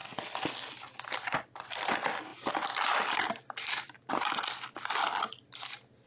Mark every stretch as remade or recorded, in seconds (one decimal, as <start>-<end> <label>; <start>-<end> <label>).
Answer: 0.0-6.1 recorded